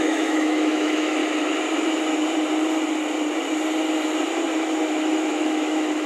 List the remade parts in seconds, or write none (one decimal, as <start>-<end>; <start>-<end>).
0.0-1.2; 4.9-6.1